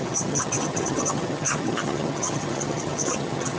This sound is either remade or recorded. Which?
remade